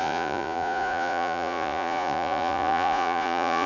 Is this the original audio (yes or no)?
no